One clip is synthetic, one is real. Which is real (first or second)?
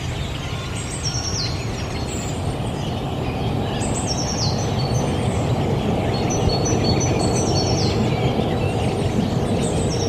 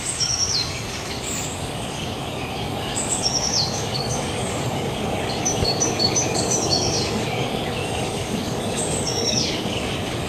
first